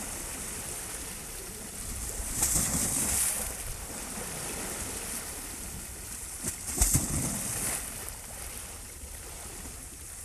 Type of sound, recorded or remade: recorded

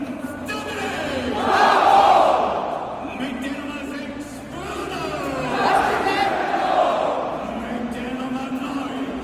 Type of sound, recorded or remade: remade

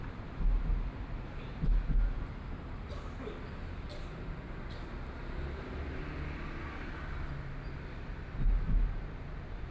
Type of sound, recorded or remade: recorded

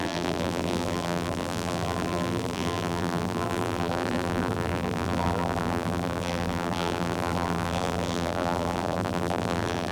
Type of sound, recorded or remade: remade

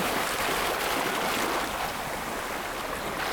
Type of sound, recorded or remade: recorded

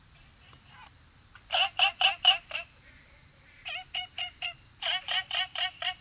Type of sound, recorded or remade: remade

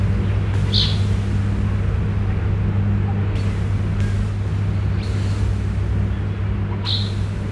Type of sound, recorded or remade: recorded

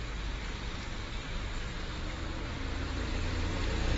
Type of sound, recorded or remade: recorded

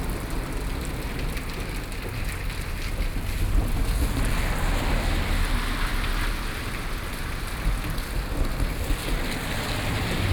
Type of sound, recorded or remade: recorded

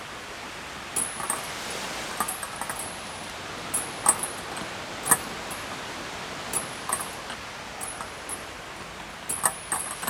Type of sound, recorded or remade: recorded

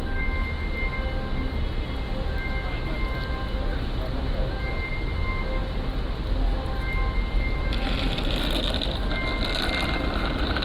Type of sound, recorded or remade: recorded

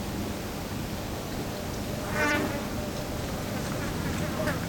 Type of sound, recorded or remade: recorded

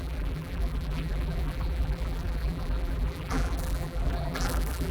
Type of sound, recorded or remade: remade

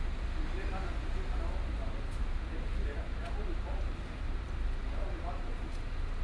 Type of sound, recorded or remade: recorded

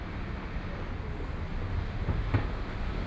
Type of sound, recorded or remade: recorded